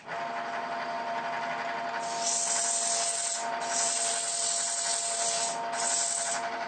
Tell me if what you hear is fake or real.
real